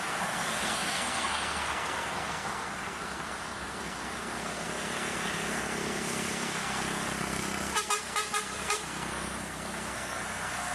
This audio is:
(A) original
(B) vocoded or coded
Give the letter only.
B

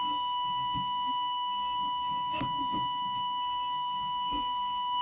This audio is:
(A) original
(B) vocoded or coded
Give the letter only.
B